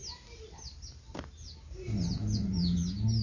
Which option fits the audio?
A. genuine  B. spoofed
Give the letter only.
A